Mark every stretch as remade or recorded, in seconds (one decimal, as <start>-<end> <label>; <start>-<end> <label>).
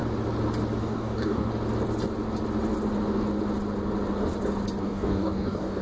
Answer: 0.0-0.8 recorded; 0.8-1.5 remade; 1.5-4.8 recorded; 4.8-5.8 remade